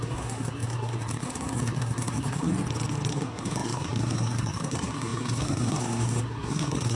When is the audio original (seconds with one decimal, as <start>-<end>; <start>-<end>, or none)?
2.5-3.1

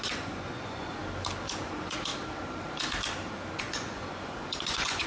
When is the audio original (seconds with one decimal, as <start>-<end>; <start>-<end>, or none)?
1.0-1.6; 2.1-3.6

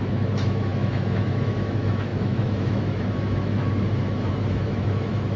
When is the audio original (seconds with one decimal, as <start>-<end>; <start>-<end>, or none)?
none

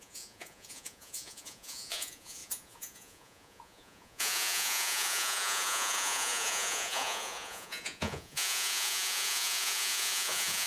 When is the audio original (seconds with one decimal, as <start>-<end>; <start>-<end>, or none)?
none

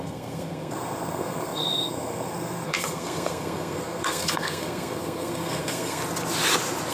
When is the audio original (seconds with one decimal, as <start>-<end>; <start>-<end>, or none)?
6.0-6.9

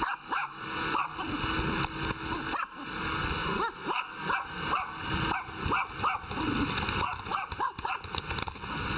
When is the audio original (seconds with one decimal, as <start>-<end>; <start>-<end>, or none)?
0.0-9.0

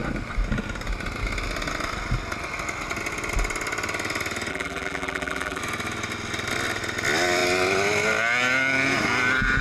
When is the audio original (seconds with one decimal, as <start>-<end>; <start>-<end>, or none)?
0.0-4.5; 5.6-9.6